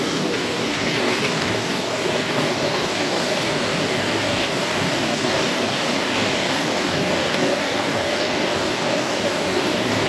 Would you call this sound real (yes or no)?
no